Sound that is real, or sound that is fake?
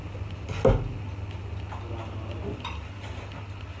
real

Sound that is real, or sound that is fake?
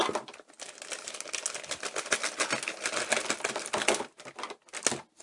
real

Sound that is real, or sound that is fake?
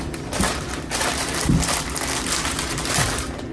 real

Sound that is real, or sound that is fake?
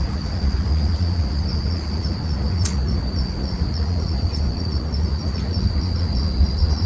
fake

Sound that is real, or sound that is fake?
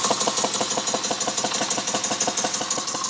real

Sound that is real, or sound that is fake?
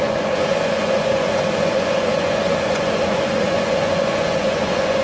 fake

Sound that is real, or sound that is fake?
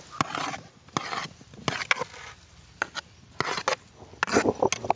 real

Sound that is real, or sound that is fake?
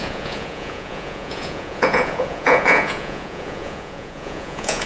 fake